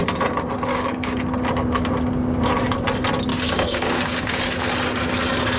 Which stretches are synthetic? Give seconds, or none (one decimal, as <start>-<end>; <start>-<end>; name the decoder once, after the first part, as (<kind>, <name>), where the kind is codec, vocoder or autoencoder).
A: 0.7-1.2 (codec, DAC); 3.3-4.4